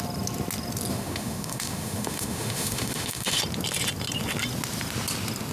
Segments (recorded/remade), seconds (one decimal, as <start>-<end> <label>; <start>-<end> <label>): 0.0-0.9 recorded; 0.9-3.4 remade; 3.4-5.5 recorded